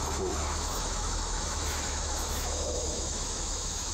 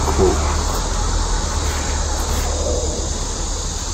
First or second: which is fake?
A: first